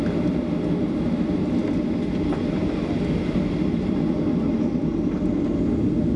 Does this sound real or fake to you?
real